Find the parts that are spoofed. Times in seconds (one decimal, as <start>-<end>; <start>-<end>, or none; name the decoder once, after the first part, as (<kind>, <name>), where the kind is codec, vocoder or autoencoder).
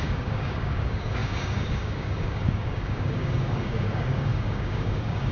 0.0-5.3 (codec, DAC)